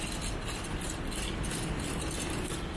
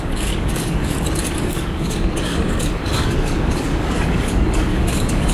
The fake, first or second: second